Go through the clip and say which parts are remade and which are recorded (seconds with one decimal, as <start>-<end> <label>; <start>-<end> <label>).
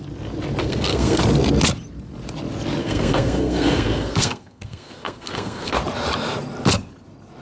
0.0-0.6 recorded; 0.6-1.2 remade; 1.2-2.8 recorded; 2.8-5.8 remade; 5.8-7.4 recorded